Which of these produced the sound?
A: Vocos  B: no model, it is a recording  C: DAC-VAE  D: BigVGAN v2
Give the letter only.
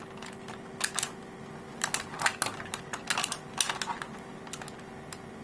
B